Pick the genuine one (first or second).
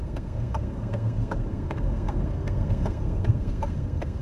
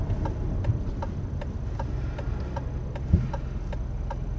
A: second